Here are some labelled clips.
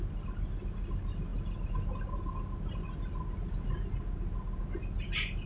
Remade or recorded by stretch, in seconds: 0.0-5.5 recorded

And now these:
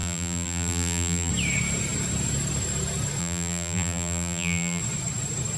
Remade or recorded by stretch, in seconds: 0.0-1.3 remade; 1.3-3.2 recorded; 3.2-4.8 remade; 4.8-5.6 recorded

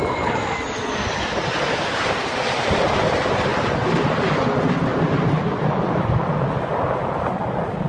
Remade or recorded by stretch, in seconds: 0.0-7.9 recorded